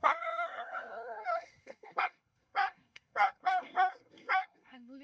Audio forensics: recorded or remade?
remade